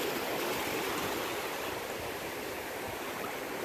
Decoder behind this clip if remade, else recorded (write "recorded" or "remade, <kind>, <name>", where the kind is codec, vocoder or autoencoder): recorded